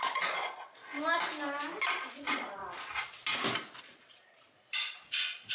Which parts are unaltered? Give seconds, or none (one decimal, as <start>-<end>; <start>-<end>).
0.8-2.1; 2.6-3.8